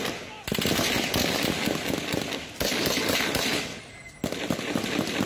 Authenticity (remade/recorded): recorded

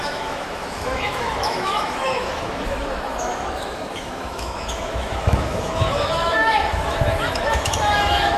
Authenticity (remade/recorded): remade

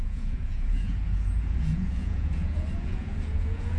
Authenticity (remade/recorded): remade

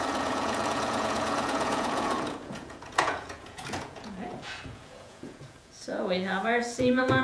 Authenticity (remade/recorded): remade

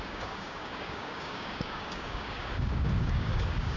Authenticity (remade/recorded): remade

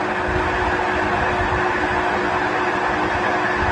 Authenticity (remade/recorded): recorded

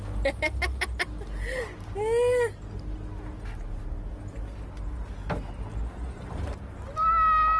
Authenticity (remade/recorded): recorded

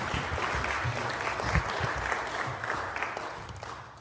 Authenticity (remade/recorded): recorded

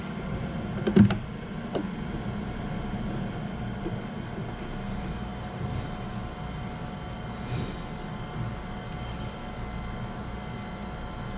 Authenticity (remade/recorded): recorded